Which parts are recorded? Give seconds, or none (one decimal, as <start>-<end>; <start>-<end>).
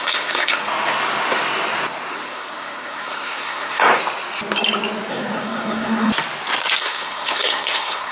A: 0.6-2.1; 3.9-5.1; 6.1-6.8